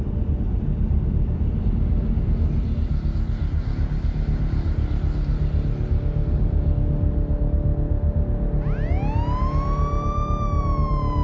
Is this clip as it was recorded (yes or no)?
yes